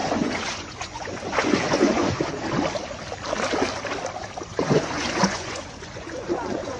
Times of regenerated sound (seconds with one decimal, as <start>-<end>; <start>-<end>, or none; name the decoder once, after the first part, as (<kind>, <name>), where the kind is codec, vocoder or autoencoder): 0.0-2.3 (vocoder, Vocos); 4.5-6.8